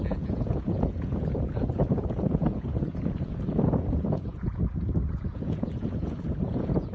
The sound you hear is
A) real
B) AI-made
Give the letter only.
B